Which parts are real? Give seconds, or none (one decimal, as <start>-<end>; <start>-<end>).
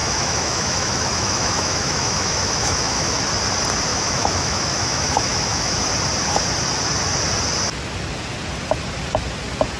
3.2-3.9; 5.9-9.8